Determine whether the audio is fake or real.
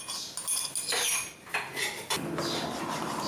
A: real